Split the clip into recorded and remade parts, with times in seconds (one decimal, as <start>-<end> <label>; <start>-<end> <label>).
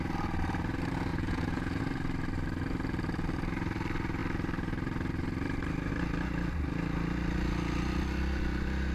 0.0-1.1 recorded; 1.1-1.8 remade; 1.8-8.9 recorded